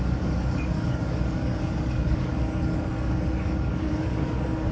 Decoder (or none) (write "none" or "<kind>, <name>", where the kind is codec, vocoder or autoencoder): codec, DAC